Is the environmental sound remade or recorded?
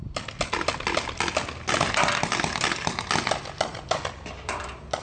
recorded